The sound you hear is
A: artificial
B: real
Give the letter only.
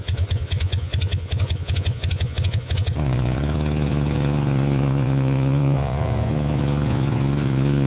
A